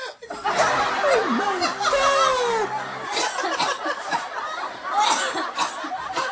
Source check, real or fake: real